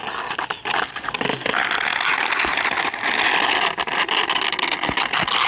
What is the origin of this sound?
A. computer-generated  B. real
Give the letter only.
B